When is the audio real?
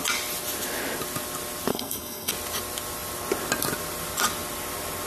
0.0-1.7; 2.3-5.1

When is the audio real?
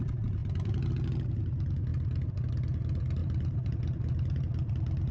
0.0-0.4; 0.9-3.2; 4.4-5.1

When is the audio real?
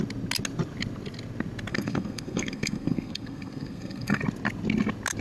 0.0-1.7; 4.2-5.2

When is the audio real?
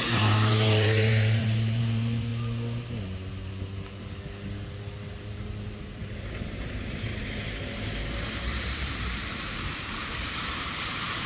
2.3-5.3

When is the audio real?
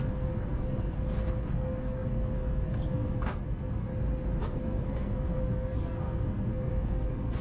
3.9-4.4